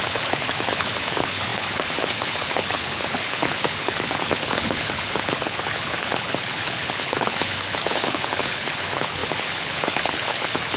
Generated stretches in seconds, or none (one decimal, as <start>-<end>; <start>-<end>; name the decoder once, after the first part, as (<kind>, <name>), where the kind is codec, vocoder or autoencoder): 0.0-10.8 (codec, HILCodec)